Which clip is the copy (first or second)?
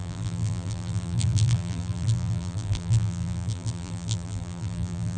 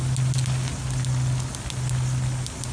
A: first